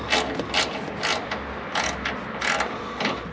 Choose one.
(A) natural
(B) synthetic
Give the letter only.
A